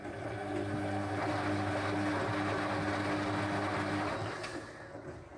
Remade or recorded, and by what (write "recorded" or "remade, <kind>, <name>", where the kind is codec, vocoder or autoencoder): recorded